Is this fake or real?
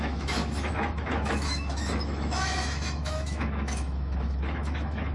fake